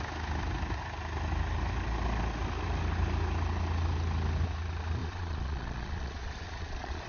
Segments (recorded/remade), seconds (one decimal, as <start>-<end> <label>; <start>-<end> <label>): 0.0-5.0 recorded; 5.0-7.1 remade